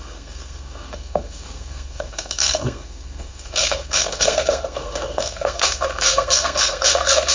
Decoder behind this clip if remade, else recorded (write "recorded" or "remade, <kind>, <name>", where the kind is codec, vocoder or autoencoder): remade, codec, SNAC